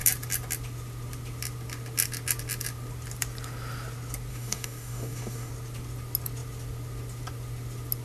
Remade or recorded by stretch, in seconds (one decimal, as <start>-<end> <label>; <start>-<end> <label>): 0.0-4.3 recorded; 4.3-5.5 remade; 5.5-8.0 recorded